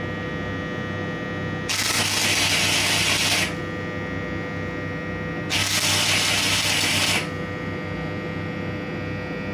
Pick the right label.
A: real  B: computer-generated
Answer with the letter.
A